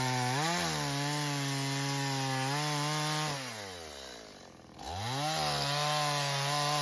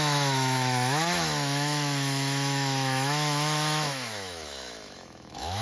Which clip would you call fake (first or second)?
second